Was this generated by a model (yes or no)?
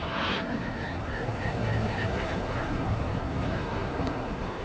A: yes